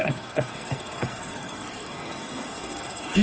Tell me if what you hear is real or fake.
fake